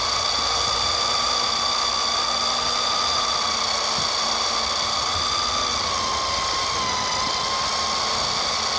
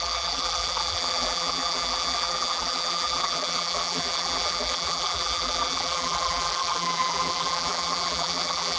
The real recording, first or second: first